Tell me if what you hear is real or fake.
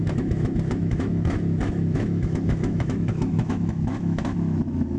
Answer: fake